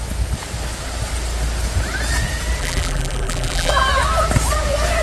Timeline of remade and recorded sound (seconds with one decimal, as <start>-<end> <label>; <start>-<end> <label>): 0.0-2.6 recorded; 2.6-3.7 remade; 3.7-5.0 recorded